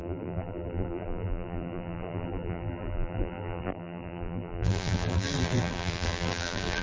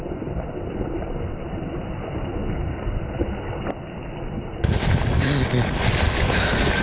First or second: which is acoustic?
second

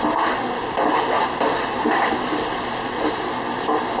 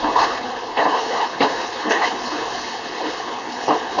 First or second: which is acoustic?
first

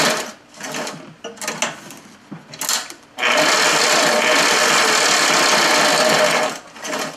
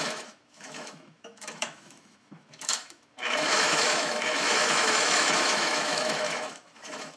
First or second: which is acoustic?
first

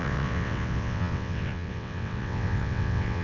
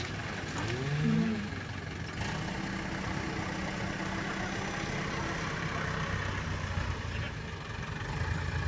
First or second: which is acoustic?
second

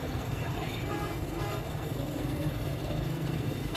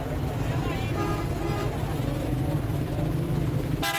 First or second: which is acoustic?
second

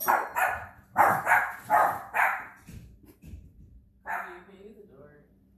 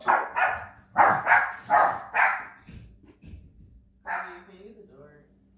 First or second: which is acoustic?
second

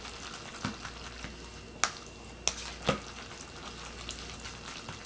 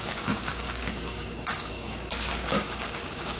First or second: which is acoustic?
first